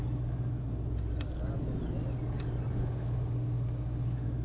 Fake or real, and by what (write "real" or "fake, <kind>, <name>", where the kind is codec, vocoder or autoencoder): real